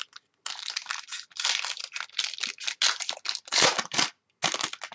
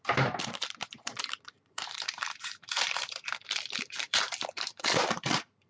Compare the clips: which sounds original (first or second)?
first